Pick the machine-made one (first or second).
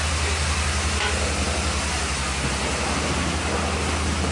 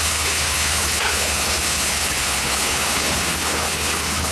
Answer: second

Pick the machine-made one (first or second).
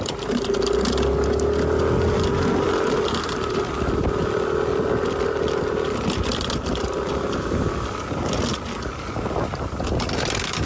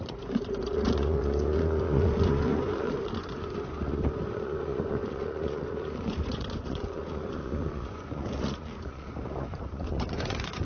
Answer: second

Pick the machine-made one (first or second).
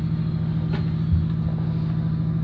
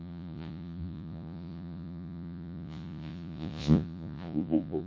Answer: second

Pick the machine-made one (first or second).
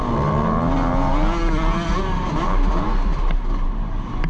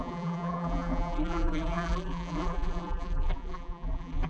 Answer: second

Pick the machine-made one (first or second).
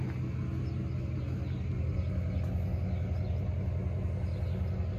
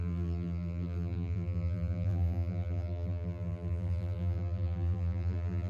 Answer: second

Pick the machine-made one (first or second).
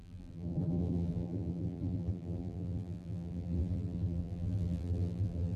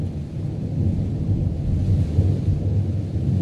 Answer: first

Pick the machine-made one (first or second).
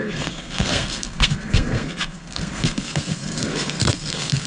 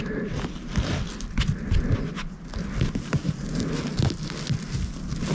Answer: first